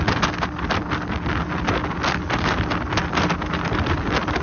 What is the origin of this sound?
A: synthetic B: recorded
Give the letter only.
B